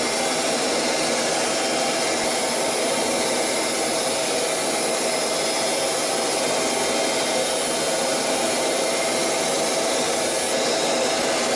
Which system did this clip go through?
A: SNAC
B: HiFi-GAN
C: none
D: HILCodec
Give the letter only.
C